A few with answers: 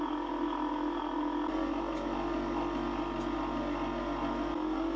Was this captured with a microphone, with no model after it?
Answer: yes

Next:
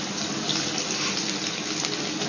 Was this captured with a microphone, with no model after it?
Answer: yes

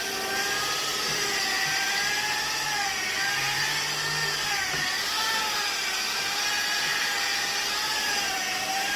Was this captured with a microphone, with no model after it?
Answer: yes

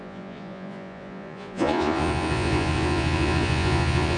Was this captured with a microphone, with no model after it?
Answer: no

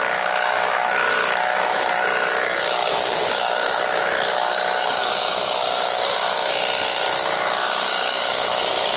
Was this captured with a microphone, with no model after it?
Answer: no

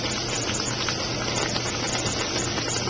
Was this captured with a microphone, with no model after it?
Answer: yes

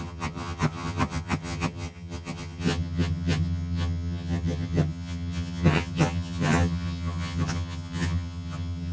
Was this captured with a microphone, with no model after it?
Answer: no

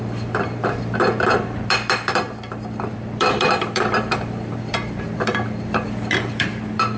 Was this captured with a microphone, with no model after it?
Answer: no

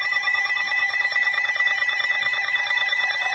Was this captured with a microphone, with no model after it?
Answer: no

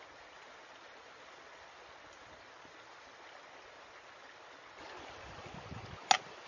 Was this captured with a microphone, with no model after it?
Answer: yes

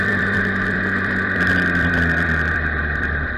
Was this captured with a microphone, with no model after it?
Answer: no